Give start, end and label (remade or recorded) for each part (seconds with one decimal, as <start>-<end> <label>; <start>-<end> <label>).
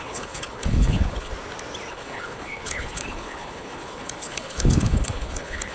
0.0-1.3 remade; 1.3-1.9 recorded; 1.9-5.7 remade